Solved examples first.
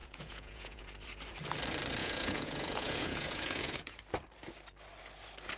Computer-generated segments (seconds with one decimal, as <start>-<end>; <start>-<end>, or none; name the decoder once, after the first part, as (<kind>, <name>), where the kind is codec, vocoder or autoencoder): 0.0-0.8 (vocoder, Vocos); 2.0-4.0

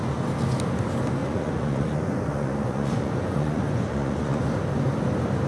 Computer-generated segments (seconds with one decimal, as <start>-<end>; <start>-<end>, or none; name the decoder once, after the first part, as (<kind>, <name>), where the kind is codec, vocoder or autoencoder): 1.2-4.4 (vocoder, Vocos)

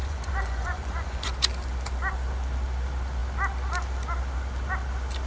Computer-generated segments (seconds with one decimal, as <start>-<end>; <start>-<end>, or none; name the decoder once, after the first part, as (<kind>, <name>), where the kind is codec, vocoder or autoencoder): 0.0-1.3 (vocoder, Vocos)